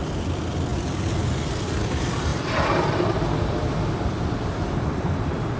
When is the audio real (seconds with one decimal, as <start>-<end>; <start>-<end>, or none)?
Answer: 0.7-1.5

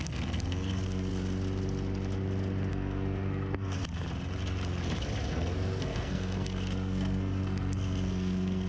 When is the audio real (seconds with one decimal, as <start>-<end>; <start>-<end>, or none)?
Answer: 1.1-2.7; 3.8-5.3

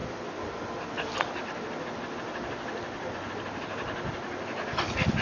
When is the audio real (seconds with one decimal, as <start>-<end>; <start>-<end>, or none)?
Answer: 0.0-5.2

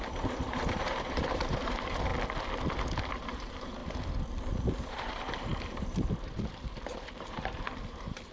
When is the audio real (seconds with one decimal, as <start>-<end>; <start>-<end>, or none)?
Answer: 2.1-3.1; 3.8-4.8

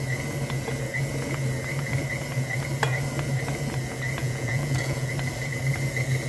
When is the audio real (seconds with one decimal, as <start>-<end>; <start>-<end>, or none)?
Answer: 0.0-4.2; 5.1-6.3

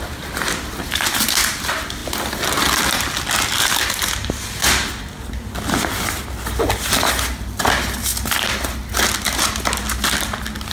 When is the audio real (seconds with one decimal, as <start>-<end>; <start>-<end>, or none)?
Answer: 0.0-10.7